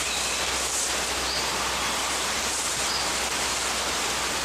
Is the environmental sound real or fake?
real